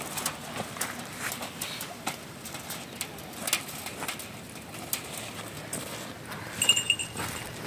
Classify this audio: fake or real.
real